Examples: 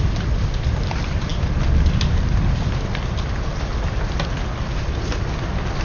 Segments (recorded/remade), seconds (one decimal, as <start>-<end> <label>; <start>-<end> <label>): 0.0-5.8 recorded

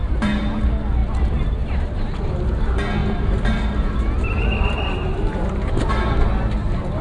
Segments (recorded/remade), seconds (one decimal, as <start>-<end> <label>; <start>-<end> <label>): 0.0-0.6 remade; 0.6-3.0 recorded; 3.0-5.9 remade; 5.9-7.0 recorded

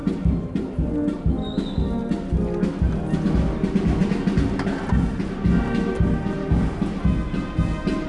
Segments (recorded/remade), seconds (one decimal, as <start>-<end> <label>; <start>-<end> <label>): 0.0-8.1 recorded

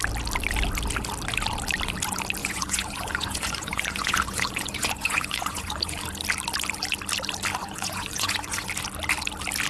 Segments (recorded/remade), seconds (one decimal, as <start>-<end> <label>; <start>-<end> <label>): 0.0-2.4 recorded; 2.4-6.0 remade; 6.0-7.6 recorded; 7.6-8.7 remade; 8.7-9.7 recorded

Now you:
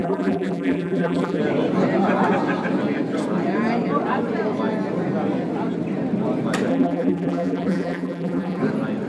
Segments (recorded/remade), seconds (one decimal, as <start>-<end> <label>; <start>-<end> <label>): 0.0-1.4 remade; 1.4-6.7 recorded; 6.7-8.6 remade; 8.6-9.1 recorded

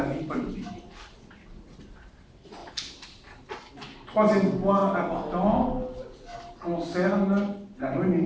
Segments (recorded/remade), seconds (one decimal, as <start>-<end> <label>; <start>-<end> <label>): 0.0-8.3 recorded